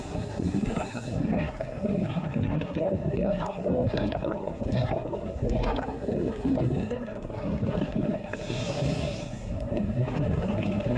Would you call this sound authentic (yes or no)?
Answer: no